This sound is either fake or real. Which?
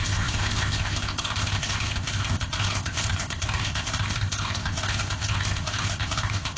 fake